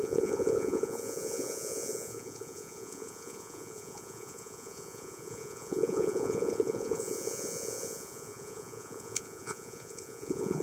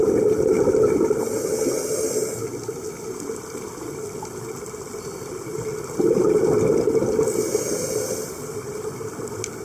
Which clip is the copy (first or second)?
first